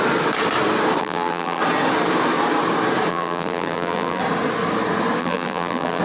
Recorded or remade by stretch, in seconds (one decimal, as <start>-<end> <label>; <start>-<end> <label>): 0.0-1.0 recorded; 1.0-1.6 remade; 1.6-3.1 recorded; 3.1-4.2 remade; 4.2-5.2 recorded; 5.2-6.0 remade